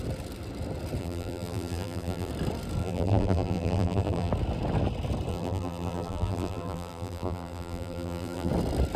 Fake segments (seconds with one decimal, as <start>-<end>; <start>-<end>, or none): 1.0-2.3; 2.8-4.3; 5.3-8.5